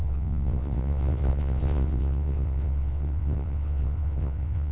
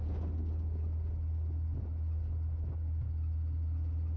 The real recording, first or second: second